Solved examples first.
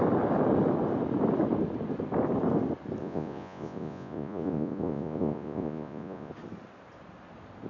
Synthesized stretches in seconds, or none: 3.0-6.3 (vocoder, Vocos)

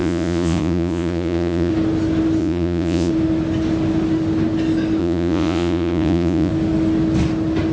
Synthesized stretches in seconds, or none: 0.0-1.7 (vocoder, Vocos); 2.4-3.1; 5.0-6.5

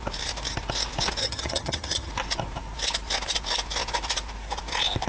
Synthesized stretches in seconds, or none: 1.2-2.1 (vocoder, HiFi-GAN)